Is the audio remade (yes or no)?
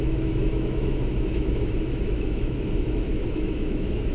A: yes